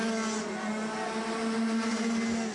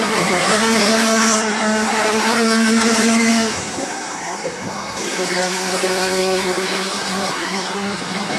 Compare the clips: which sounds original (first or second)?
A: first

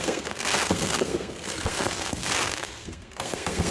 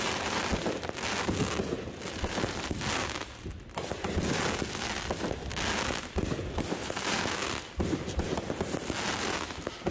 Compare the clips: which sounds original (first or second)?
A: second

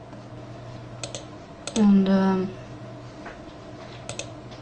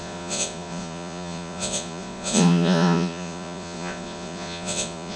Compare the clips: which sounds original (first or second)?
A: first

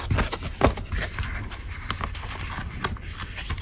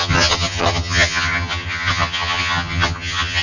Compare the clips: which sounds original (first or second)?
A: first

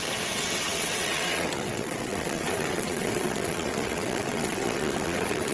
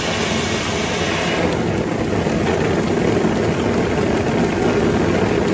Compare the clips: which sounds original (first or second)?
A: second